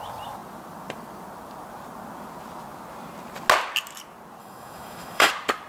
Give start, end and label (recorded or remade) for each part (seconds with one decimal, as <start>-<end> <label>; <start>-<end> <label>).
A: 0.0-4.4 recorded; 4.4-5.3 remade; 5.3-5.7 recorded